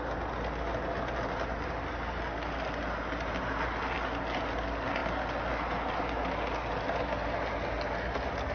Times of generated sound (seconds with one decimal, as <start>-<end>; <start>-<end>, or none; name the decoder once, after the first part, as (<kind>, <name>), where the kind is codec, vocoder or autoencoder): none